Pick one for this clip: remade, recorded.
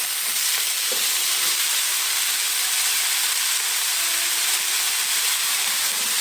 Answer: remade